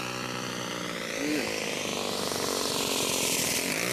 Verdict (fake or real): real